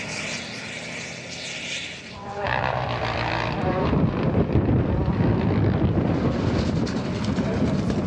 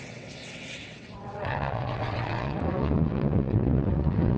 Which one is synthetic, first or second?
second